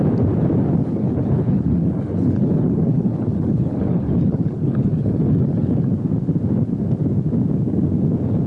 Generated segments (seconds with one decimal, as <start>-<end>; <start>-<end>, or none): 0.8-5.9

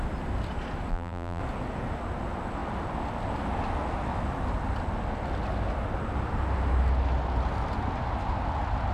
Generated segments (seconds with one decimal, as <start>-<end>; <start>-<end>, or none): 0.9-1.4

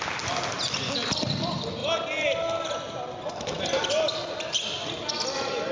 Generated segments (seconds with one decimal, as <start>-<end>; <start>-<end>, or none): none

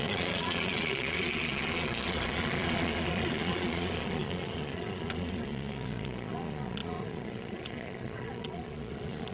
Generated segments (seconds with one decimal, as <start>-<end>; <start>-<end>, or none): 0.0-9.3

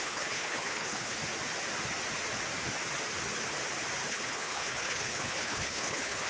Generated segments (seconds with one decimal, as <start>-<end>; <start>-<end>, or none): 0.0-1.2; 4.1-6.3